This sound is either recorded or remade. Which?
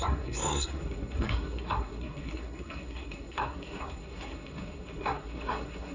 remade